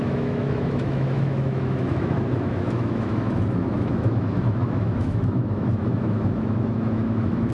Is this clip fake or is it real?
fake